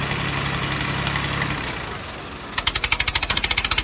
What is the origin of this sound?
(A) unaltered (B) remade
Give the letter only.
A